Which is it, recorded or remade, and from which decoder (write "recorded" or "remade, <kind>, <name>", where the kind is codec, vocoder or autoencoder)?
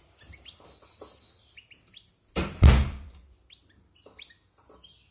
recorded